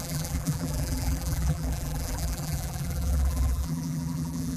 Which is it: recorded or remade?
remade